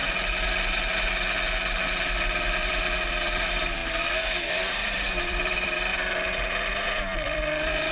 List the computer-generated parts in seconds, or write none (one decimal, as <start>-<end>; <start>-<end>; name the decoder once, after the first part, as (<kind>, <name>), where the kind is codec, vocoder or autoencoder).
2.2-3.8 (vocoder, BigVGAN v2); 4.5-7.9